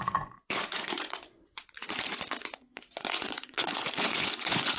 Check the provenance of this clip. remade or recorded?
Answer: remade